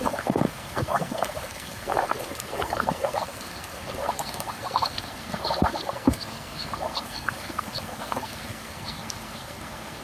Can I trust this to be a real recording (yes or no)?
no